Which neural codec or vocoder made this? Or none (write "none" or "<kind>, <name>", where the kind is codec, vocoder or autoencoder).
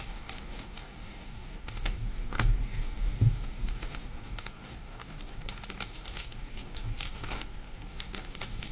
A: codec, DAC